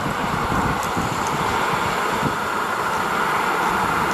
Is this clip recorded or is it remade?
recorded